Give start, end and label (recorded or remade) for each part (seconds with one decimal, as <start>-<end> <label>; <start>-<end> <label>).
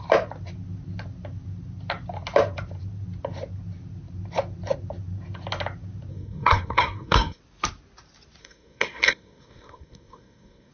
0.0-6.1 recorded; 6.1-7.4 remade; 7.4-8.4 recorded; 8.4-10.7 remade